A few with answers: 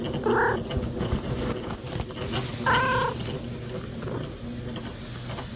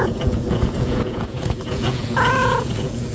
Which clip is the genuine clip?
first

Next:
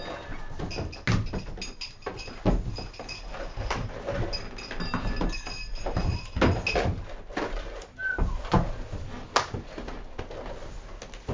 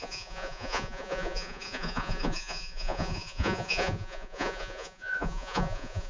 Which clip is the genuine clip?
first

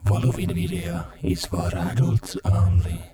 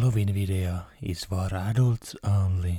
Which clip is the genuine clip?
second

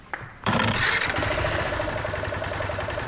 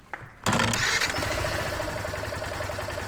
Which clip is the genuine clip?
second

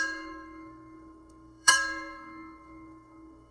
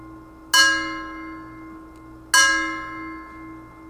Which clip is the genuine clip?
second